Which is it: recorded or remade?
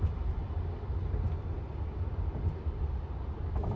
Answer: remade